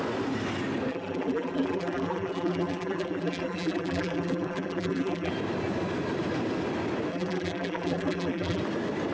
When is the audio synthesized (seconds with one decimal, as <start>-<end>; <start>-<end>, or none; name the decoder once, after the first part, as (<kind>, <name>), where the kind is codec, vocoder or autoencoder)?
0.9-5.3 (vocoder, BigVGAN v2); 7.1-8.6